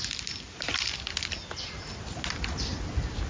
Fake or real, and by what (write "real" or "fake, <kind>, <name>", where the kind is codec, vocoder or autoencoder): real